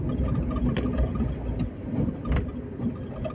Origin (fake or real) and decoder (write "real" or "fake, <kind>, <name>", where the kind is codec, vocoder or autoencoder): real